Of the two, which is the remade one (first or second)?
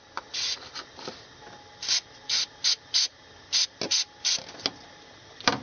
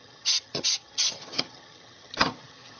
second